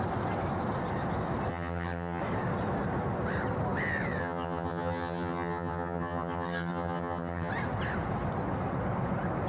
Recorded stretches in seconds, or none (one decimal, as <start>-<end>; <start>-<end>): 0.0-1.5; 2.2-4.2; 7.5-9.5

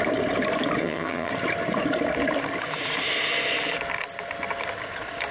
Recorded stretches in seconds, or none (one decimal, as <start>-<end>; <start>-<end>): 0.0-0.8; 1.3-5.3

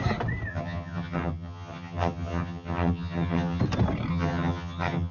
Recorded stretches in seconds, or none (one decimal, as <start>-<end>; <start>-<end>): 0.0-0.5; 3.6-4.1

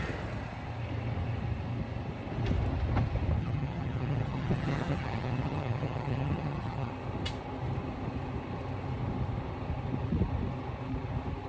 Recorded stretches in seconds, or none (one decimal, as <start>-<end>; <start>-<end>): 0.0-3.4; 6.9-11.5

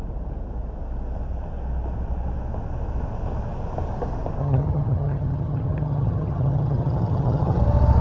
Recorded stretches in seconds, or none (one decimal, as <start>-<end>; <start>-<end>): 0.0-4.4; 7.6-8.0

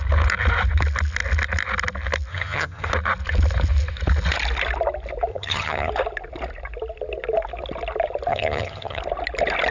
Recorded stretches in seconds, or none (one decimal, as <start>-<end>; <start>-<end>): 0.0-2.3; 2.9-5.3; 5.9-8.3; 9.0-9.7

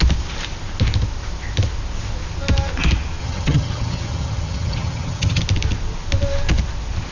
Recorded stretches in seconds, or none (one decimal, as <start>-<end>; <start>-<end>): 0.0-3.2; 5.4-7.1

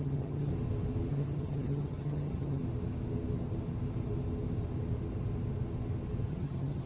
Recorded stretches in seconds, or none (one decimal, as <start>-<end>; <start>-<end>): 0.5-1.1; 2.6-6.3